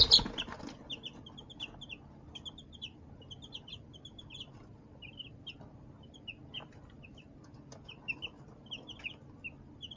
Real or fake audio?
real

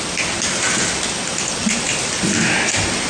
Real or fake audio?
real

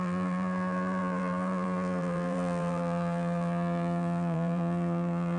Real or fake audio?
fake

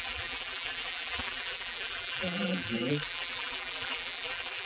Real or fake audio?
fake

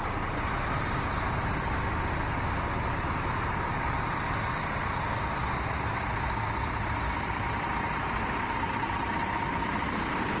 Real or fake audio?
real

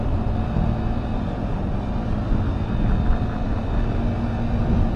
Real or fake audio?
real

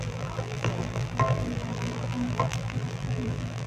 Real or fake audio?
fake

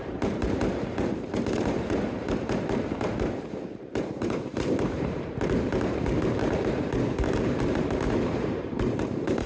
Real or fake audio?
fake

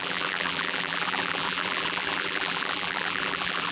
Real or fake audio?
fake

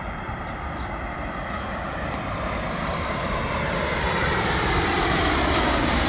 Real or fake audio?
fake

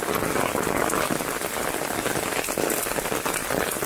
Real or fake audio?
real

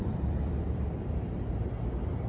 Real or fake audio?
real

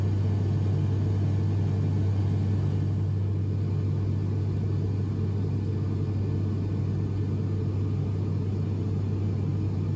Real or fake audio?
real